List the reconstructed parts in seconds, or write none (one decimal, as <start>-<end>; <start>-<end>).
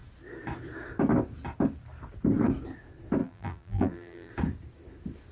3.2-4.3